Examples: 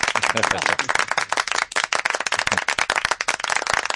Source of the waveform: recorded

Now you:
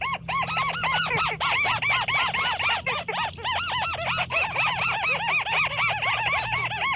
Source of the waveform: recorded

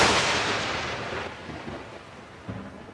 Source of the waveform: recorded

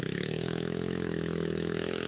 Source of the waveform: remade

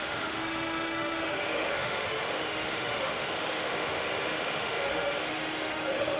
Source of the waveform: remade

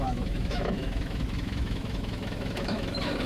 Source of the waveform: remade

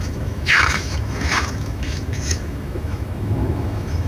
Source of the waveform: remade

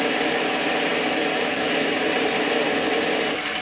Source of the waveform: recorded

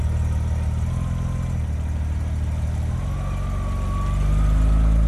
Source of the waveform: recorded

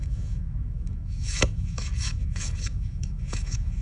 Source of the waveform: remade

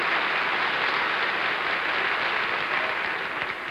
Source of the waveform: recorded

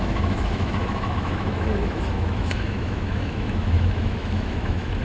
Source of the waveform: remade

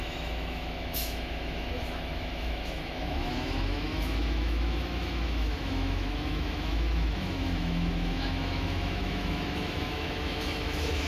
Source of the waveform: remade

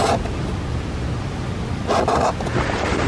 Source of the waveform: recorded